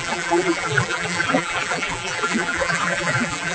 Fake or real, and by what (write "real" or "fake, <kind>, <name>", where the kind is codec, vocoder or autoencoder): fake, vocoder, BigVGAN v2